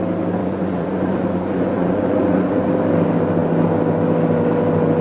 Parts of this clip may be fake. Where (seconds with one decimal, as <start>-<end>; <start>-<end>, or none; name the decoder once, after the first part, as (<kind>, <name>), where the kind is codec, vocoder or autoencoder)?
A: 0.4-2.7 (vocoder, Vocos)